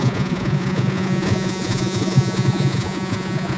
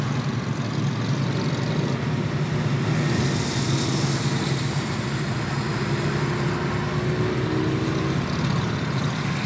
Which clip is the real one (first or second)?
second